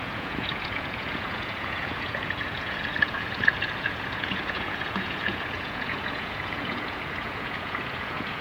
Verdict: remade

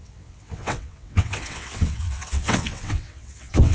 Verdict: remade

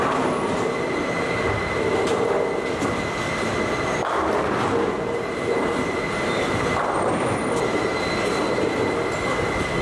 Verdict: recorded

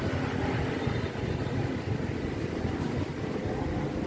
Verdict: recorded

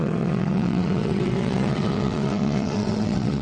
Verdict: remade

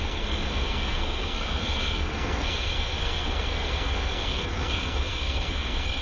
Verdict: remade